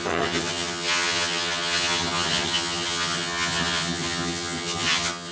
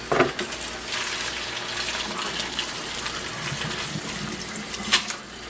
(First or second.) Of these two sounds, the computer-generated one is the first